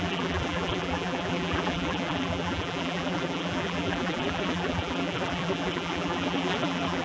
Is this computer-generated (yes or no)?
yes